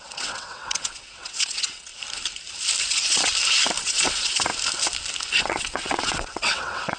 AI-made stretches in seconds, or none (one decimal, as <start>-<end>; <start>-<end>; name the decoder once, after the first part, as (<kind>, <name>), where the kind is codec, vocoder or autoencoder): 0.0-1.9 (vocoder, WaveNeXt); 2.8-3.3; 3.8-4.5; 5.4-7.0